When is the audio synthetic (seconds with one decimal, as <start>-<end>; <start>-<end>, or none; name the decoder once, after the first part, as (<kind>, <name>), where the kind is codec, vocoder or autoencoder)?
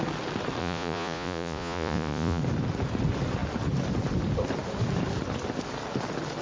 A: 0.6-2.4 (vocoder, Vocos)